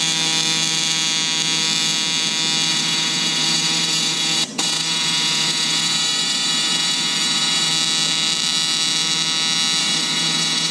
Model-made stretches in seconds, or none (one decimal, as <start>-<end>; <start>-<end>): 2.7-7.7; 9.8-10.7